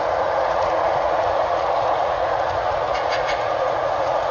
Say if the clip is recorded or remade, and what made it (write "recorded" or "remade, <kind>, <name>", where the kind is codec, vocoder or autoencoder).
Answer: remade, vocoder, Vocos